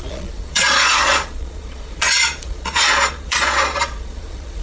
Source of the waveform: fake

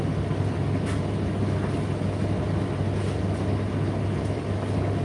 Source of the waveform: real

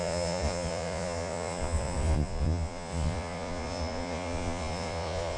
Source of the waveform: fake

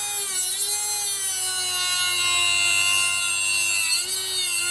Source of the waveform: real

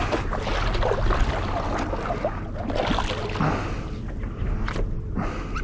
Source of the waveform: real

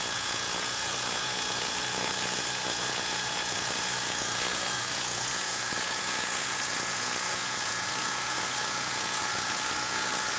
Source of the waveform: fake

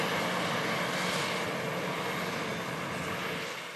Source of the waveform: real